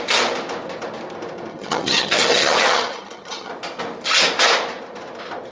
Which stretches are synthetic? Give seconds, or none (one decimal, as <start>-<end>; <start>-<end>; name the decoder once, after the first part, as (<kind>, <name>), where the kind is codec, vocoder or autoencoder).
1.5-3.5 (vocoder, HiFi-GAN)